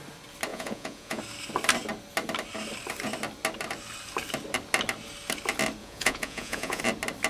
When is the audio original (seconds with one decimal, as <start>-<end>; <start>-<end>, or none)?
0.0-0.5; 1.2-5.8; 6.8-7.3